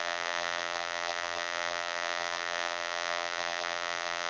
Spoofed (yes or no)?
yes